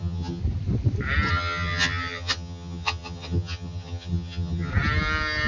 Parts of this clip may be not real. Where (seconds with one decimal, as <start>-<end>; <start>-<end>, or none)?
0.0-0.4; 1.3-4.7